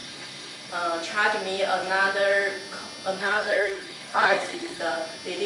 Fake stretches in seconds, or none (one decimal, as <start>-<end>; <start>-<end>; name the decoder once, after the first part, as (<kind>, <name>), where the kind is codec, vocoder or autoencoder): 0.0-0.7 (codec, SNAC); 3.2-4.8